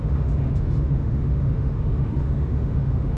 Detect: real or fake fake